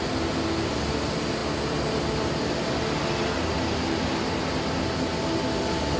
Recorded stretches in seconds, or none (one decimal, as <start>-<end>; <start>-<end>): 0.0-6.0